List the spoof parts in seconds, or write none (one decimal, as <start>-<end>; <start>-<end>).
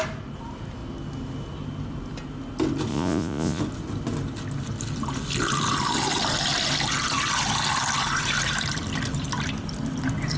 2.9-3.6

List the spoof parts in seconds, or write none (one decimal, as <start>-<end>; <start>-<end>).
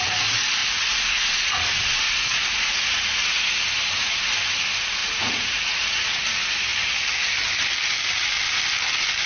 0.6-3.6; 5.0-6.2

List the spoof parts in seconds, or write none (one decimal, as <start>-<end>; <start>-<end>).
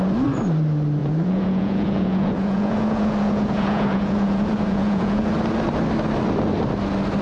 1.0-5.3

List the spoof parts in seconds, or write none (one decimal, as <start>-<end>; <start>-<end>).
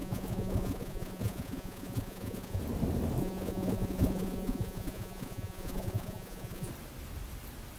0.0-2.6; 3.2-6.7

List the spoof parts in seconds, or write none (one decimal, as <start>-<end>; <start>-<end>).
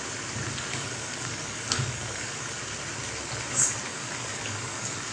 0.7-2.5; 3.9-5.1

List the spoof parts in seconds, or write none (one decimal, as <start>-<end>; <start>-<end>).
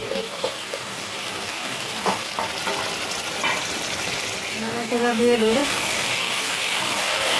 0.0-2.3; 4.5-7.4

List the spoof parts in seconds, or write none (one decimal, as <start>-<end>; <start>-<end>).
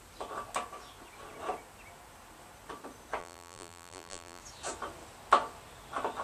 3.2-4.4